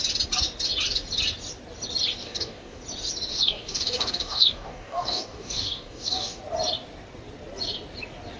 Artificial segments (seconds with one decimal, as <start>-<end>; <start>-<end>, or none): 2.2-2.8; 3.3-6.4